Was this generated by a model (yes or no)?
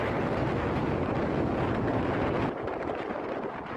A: no